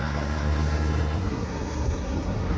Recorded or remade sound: remade